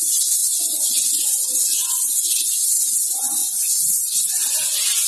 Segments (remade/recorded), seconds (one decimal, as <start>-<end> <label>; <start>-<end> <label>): 0.0-0.4 recorded; 0.4-2.8 remade; 2.8-3.4 recorded; 3.4-5.1 remade

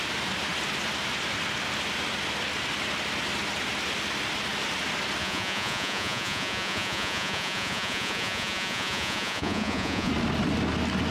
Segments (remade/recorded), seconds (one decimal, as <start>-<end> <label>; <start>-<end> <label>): 0.0-5.2 recorded; 5.2-10.1 remade; 10.1-11.1 recorded

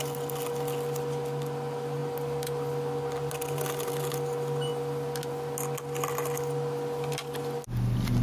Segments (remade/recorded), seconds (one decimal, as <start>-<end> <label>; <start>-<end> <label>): 0.0-8.2 recorded

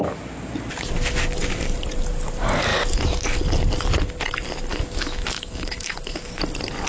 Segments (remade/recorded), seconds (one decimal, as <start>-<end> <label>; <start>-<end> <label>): 0.0-4.7 recorded; 4.7-6.4 remade; 6.4-6.9 recorded

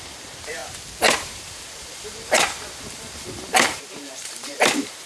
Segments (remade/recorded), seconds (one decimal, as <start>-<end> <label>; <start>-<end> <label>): 0.0-0.6 remade; 0.6-1.3 recorded; 1.3-5.1 remade